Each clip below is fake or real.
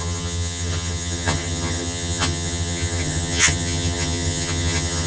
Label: fake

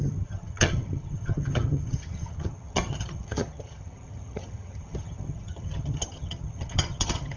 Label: fake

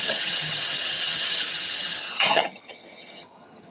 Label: fake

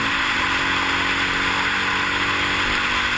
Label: real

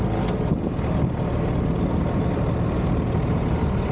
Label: real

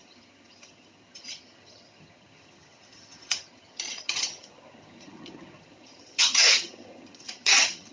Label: fake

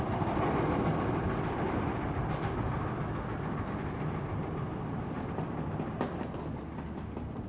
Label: real